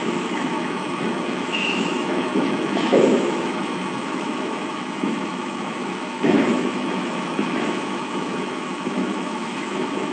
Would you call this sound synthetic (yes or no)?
yes